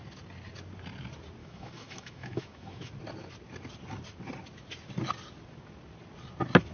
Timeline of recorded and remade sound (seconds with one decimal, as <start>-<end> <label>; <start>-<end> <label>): 0.0-1.4 recorded; 1.4-2.9 remade; 2.9-6.7 recorded

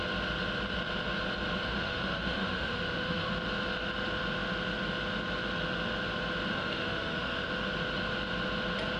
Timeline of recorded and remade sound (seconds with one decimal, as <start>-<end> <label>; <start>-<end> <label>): 0.0-1.7 recorded; 1.7-3.3 remade; 3.3-6.5 recorded; 6.5-7.5 remade; 7.5-9.0 recorded

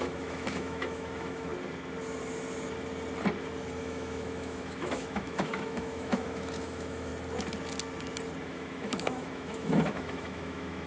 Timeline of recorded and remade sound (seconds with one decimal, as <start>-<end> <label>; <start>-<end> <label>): 0.0-1.5 remade; 1.5-3.8 recorded; 3.8-7.1 remade; 7.1-8.4 recorded; 8.4-10.9 remade

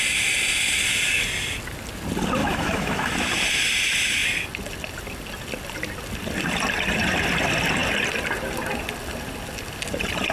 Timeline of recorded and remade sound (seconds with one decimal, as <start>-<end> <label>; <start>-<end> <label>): 0.0-2.4 recorded; 2.4-3.1 remade; 3.1-10.3 recorded